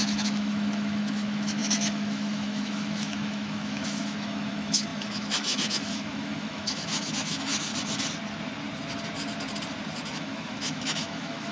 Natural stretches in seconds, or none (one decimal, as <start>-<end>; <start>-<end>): 7.7-10.1